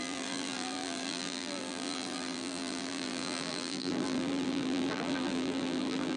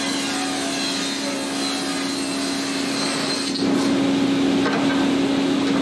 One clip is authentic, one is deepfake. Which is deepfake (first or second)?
first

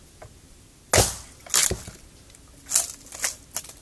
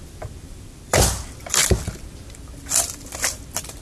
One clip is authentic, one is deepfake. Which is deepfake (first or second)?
second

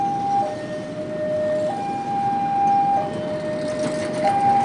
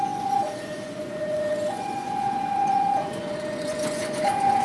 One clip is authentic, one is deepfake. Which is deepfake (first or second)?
second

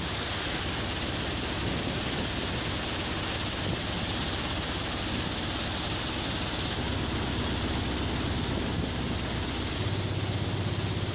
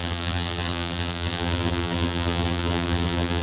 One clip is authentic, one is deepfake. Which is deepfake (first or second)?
second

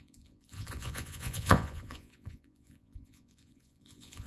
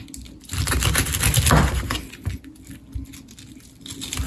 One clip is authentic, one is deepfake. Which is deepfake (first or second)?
first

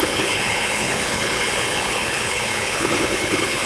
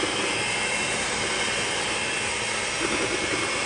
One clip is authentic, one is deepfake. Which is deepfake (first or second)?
first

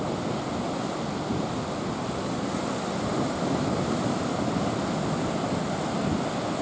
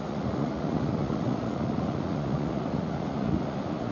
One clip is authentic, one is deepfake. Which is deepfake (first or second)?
second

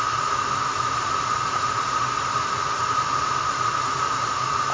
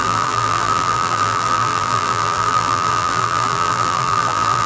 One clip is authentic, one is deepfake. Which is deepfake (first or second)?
second